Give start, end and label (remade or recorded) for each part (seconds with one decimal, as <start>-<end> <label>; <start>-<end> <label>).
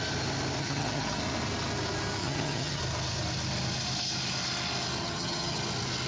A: 0.0-0.6 recorded; 0.6-1.2 remade; 1.2-2.2 recorded; 2.2-2.8 remade; 2.8-5.0 recorded; 5.0-5.6 remade; 5.6-6.1 recorded